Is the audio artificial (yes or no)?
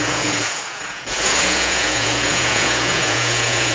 yes